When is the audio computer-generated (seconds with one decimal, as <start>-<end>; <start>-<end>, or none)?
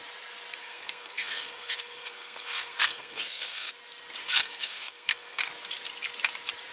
0.6-3.7; 4.2-5.4